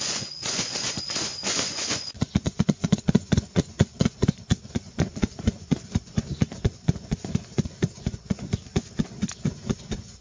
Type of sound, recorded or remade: remade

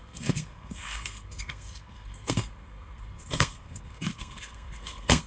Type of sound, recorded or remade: remade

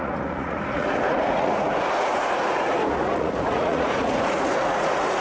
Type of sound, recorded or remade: remade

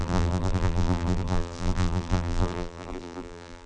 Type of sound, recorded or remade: remade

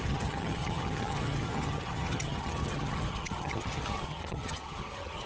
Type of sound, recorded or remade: remade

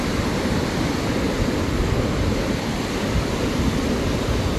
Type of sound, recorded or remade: recorded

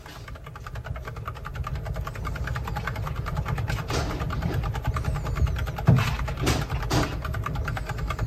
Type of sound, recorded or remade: recorded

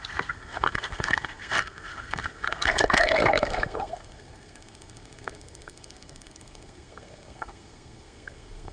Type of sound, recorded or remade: remade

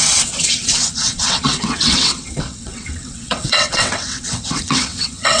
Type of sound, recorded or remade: remade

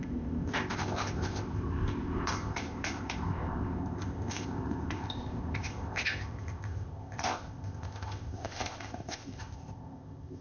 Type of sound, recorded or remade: remade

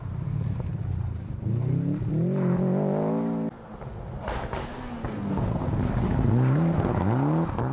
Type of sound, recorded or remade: recorded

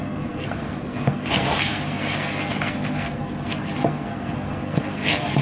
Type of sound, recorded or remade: remade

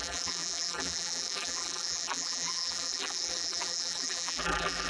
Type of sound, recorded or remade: remade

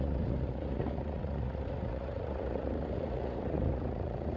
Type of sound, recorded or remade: remade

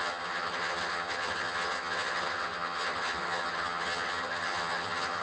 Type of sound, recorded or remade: remade